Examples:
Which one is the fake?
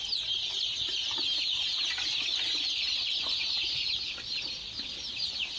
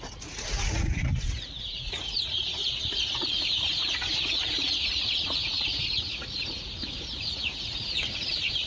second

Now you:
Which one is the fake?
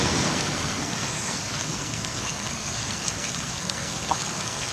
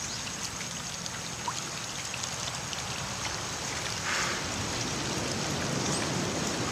first